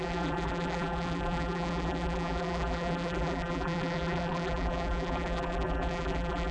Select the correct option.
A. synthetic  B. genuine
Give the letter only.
A